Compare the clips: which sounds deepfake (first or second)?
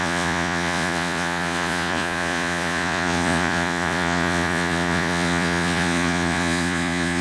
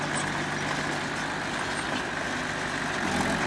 first